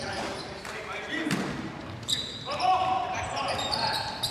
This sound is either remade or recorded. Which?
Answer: remade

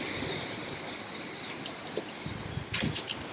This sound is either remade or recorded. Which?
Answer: recorded